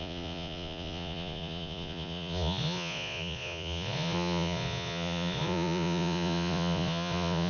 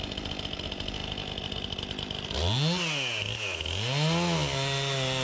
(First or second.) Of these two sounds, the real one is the second